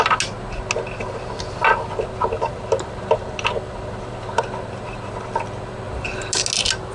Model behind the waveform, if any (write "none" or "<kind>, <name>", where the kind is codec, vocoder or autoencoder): none